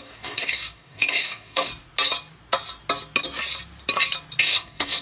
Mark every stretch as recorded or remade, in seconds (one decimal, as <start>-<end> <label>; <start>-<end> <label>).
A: 0.0-1.7 remade; 1.7-4.4 recorded; 4.4-5.0 remade